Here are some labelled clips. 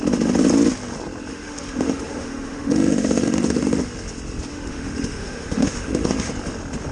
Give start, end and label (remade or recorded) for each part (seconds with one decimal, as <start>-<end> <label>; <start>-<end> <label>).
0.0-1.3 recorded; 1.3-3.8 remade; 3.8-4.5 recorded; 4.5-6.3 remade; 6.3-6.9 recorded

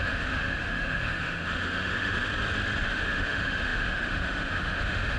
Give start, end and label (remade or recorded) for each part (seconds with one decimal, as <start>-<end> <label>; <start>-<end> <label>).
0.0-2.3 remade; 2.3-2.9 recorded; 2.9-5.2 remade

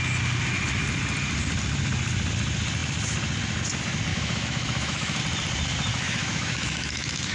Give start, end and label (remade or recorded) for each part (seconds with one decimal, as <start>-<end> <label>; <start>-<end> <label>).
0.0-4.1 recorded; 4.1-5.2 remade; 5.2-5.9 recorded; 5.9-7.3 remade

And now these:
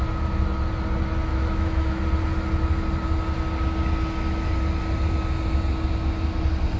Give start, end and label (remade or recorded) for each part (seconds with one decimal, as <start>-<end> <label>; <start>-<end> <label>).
0.0-1.3 recorded; 1.3-2.0 remade; 2.0-6.8 recorded

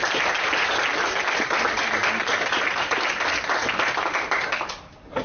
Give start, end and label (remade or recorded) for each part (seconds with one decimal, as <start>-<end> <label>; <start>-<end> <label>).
0.0-5.2 recorded

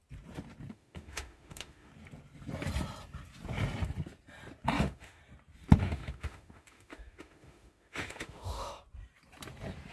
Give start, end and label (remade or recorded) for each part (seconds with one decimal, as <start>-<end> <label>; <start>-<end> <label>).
0.0-0.7 recorded; 0.7-1.9 remade; 1.9-4.8 recorded; 4.8-5.2 remade; 5.2-5.8 recorded; 5.8-8.8 remade; 8.8-9.9 recorded